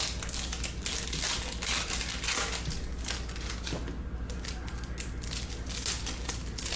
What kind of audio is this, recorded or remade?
recorded